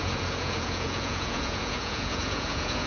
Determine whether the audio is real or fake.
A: fake